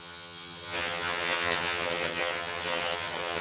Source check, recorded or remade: remade